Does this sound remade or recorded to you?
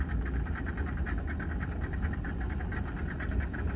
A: recorded